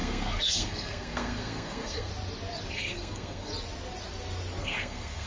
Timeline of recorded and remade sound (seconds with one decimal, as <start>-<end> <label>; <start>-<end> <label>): 0.0-2.1 remade; 2.1-2.7 recorded; 2.7-3.5 remade; 3.5-4.6 recorded; 4.6-5.3 remade

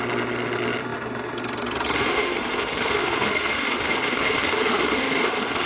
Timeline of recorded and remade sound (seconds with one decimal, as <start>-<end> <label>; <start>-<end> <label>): 0.0-2.0 recorded; 2.0-5.7 remade

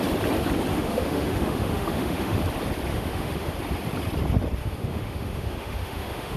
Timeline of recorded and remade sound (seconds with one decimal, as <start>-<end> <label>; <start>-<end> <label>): 0.0-0.7 recorded; 0.7-2.4 remade; 2.4-2.9 recorded; 2.9-3.5 remade; 3.5-4.6 recorded; 4.6-6.4 remade